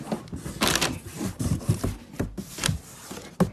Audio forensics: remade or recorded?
recorded